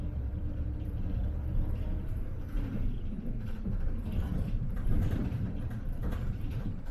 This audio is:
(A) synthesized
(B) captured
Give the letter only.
A